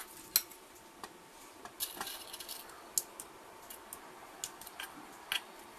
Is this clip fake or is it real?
real